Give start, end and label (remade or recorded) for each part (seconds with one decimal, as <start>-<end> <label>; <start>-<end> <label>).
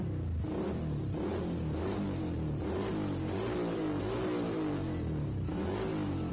0.0-6.3 recorded